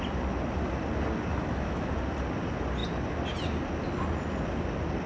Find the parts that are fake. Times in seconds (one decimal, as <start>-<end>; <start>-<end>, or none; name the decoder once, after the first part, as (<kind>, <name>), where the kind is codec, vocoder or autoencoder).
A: 1.3-1.9 (autoencoder, DAC-VAE)